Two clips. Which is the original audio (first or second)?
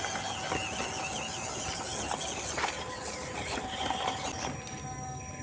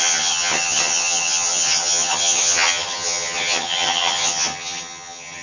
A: first